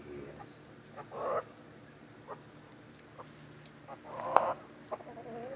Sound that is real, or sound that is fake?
real